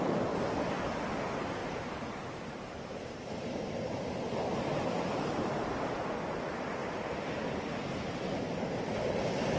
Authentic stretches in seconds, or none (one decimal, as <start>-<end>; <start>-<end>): 0.0-1.6; 5.5-6.8; 7.4-9.6